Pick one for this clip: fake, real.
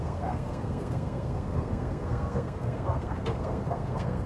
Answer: fake